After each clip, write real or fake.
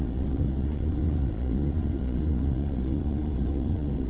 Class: fake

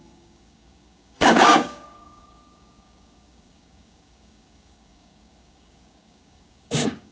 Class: fake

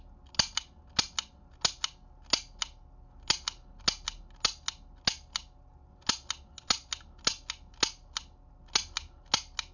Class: real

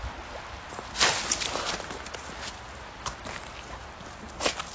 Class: real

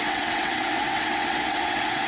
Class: fake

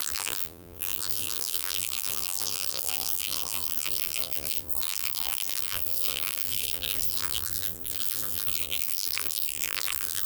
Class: fake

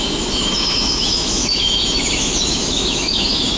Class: fake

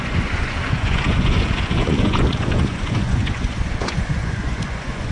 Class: fake